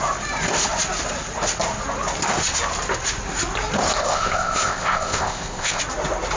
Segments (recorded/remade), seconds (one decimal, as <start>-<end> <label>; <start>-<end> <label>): 0.0-4.0 recorded; 4.0-5.8 remade; 5.8-6.4 recorded